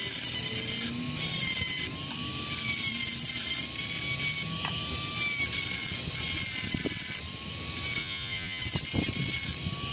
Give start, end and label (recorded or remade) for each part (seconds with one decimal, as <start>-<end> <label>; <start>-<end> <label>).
0.0-8.0 recorded; 8.0-8.6 remade; 8.6-9.9 recorded